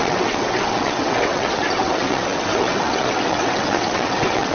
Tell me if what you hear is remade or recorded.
remade